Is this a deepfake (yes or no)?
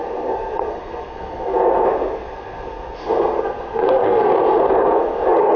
yes